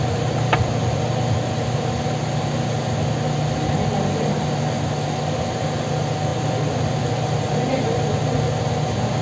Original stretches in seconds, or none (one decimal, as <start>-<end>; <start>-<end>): 0.0-9.2